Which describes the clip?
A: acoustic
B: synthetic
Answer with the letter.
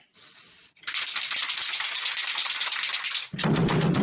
A